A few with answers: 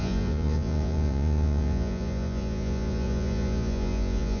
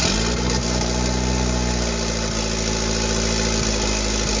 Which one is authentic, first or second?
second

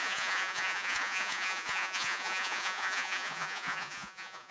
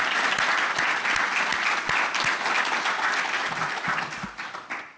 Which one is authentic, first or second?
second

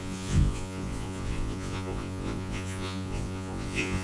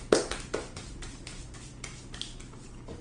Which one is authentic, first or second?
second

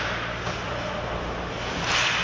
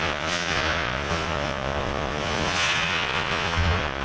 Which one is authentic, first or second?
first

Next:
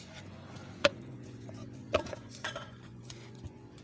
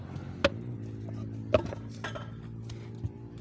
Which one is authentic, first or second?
second